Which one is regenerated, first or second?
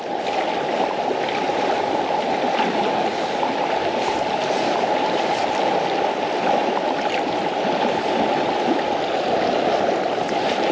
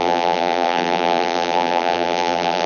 second